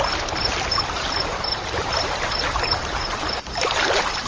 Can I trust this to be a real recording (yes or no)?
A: no